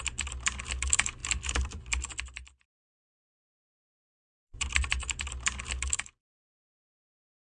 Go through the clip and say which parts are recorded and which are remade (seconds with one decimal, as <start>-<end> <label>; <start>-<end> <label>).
0.0-1.2 recorded; 1.2-5.2 remade; 5.2-7.5 recorded